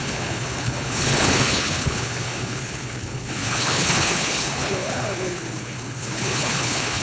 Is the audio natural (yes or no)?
no